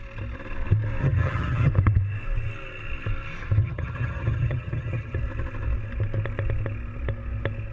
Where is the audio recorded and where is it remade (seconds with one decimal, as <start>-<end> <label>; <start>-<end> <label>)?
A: 0.0-1.0 recorded; 1.0-1.7 remade; 1.7-3.6 recorded; 3.6-5.2 remade; 5.2-7.7 recorded